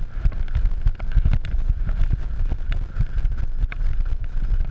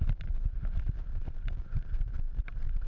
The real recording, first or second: first